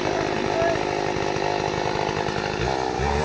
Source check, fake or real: real